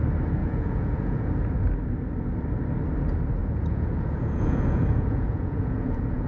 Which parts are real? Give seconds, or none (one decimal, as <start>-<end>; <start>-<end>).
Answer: 0.0-0.4; 1.3-3.4